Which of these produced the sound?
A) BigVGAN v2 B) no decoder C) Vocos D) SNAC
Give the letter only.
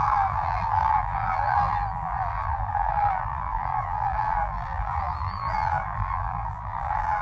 A